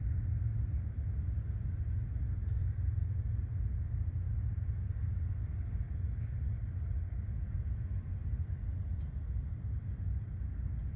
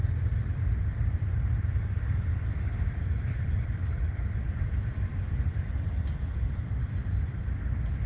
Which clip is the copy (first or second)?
second